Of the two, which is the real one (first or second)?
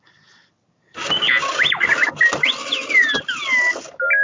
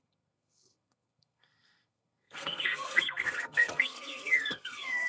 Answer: first